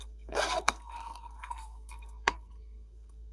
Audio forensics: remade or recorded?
remade